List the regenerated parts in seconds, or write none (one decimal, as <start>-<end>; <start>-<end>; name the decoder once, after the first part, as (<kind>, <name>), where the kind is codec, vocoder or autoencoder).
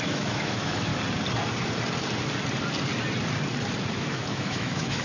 0.0-0.9 (autoencoder, DAC-VAE); 3.9-5.0